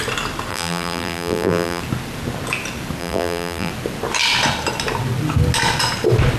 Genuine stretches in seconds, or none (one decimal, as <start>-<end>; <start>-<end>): 0.0-0.5; 1.8-3.0; 3.7-6.4